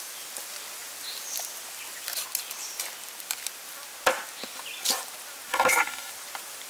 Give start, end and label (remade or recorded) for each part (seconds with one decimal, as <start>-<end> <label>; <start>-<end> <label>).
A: 0.0-5.5 recorded; 5.5-6.1 remade; 6.1-6.7 recorded